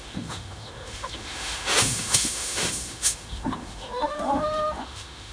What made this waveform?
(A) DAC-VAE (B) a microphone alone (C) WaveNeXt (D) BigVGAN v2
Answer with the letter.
A